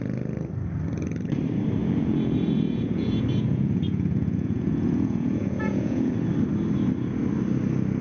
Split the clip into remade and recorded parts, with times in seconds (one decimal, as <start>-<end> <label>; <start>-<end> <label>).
0.0-1.8 recorded; 1.8-6.1 remade; 6.1-8.0 recorded